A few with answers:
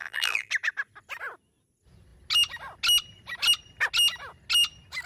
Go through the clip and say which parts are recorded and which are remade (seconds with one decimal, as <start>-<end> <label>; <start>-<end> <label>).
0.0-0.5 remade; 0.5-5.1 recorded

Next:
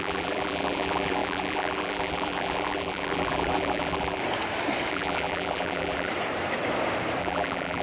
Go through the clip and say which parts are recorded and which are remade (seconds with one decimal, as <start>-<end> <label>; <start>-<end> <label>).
0.0-4.2 remade; 4.2-4.9 recorded; 4.9-6.1 remade; 6.1-7.2 recorded; 7.2-7.8 remade

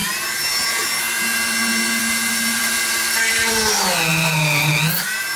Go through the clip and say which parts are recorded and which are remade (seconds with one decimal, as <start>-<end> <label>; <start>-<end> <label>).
0.0-2.6 recorded; 2.6-3.5 remade; 3.5-4.1 recorded; 4.1-4.7 remade; 4.7-5.4 recorded

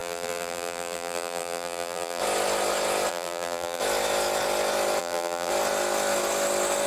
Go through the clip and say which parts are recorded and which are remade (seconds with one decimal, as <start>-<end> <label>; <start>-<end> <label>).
0.0-2.2 remade; 2.2-3.1 recorded; 3.1-3.8 remade; 3.8-5.0 recorded; 5.0-5.5 remade; 5.5-6.9 recorded

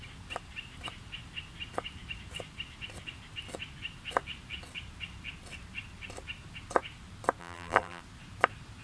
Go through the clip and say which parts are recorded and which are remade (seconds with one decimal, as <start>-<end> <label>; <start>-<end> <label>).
0.0-7.4 recorded; 7.4-8.0 remade; 8.0-8.8 recorded

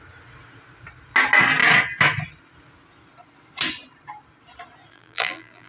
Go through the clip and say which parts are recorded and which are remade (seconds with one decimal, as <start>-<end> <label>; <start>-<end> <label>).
0.0-4.9 recorded; 4.9-5.7 remade

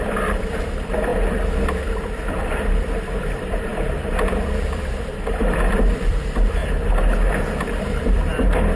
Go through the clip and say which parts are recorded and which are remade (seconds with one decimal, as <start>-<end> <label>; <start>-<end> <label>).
0.0-1.1 remade; 1.1-2.3 recorded; 2.3-6.6 remade; 6.6-7.6 recorded; 7.6-8.8 remade

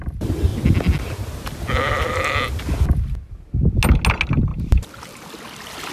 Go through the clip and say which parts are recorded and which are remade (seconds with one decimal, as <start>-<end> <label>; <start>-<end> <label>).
0.0-4.5 recorded; 4.5-5.9 remade